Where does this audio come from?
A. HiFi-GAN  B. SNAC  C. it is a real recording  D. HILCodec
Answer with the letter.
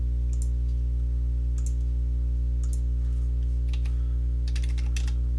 C